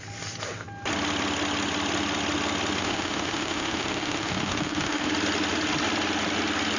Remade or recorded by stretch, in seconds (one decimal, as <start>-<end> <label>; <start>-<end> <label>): 0.0-2.8 recorded; 2.8-5.1 remade; 5.1-6.8 recorded